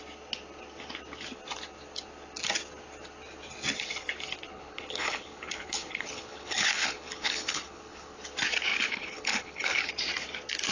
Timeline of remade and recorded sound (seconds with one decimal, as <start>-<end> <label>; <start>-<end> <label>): 0.0-4.5 recorded; 4.5-8.2 remade; 8.2-8.7 recorded; 8.7-9.9 remade; 9.9-10.7 recorded